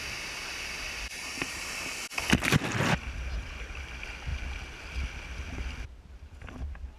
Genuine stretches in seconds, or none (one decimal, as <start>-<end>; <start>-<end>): 0.0-7.0